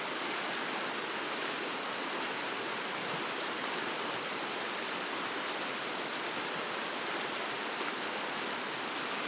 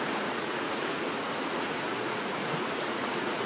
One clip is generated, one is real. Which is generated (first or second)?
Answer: second